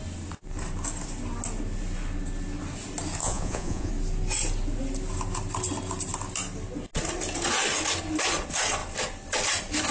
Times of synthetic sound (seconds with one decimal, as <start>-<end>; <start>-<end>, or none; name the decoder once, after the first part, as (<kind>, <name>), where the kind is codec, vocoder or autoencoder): 3.2-3.9 (vocoder, Vocos)